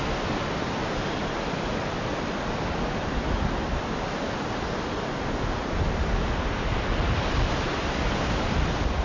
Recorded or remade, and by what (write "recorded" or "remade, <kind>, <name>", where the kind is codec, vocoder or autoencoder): recorded